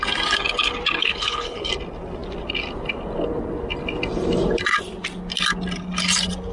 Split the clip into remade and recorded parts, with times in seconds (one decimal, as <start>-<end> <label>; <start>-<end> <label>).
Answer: 0.0-1.0 recorded; 1.0-1.7 remade; 1.7-6.5 recorded